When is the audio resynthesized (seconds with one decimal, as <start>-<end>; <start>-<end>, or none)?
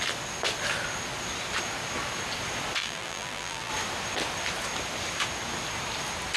2.8-3.7